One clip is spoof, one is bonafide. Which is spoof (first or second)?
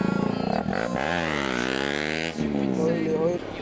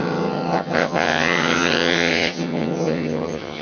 second